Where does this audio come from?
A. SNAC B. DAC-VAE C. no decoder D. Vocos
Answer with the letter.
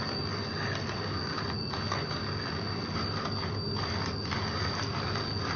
C